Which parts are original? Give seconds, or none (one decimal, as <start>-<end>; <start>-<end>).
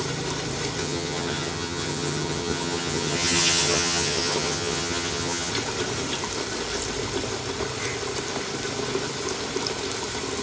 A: 0.0-0.8; 5.5-10.4